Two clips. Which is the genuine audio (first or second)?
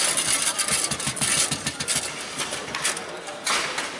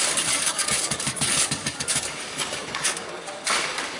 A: first